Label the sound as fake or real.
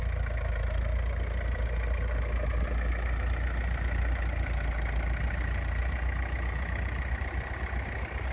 real